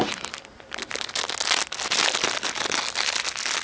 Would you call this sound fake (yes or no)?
no